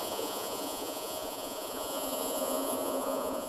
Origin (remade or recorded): remade